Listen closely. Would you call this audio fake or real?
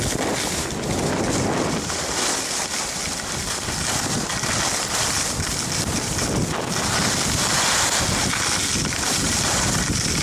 real